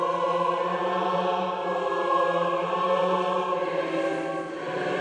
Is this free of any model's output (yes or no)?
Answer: no